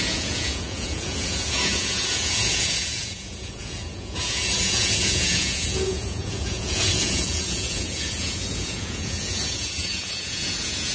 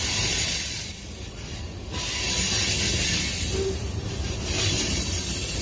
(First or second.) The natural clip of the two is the second